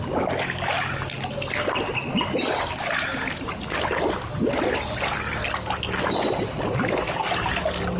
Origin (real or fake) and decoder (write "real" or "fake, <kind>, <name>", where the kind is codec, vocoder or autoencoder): real